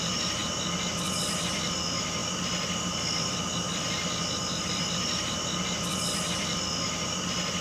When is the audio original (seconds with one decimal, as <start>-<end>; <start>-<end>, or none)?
0.0-7.6